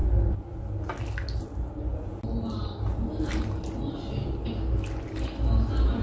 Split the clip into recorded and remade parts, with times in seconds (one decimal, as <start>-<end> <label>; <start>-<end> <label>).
0.0-6.0 recorded